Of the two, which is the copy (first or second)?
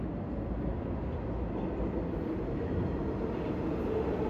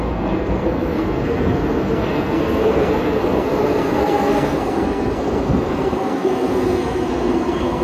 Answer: second